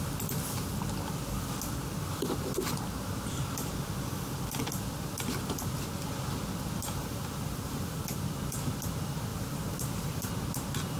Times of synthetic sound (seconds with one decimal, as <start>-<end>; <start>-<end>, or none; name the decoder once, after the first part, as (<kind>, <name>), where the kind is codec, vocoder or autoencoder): 6.8-8.0 (vocoder, BigVGAN v2); 9.3-10.3